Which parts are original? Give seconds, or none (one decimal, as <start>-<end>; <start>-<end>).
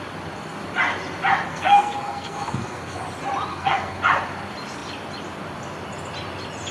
0.0-1.5; 3.0-3.5; 4.0-6.7